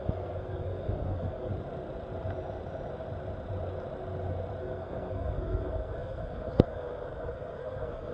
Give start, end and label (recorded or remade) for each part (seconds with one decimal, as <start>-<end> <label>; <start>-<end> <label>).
0.0-1.5 remade; 1.5-4.6 recorded; 4.6-8.1 remade